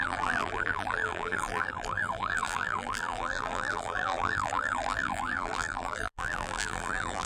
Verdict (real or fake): fake